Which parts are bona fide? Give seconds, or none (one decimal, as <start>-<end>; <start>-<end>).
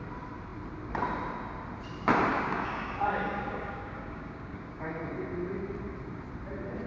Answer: 0.0-2.3; 5.1-6.9